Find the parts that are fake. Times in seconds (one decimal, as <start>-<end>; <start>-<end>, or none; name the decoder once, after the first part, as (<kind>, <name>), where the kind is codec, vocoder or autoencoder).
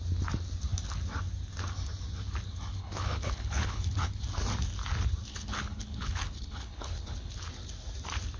2.8-4.2 (codec, HILCodec); 5.3-7.3